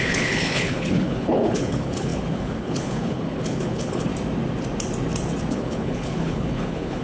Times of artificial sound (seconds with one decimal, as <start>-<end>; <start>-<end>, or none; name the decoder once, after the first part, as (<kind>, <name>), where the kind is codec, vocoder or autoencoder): 0.0-4.1 (codec, HILCodec); 5.5-7.0